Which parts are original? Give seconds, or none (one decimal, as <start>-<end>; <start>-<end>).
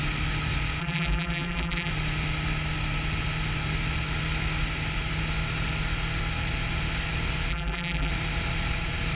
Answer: 0.0-0.8; 1.9-7.5; 8.1-9.2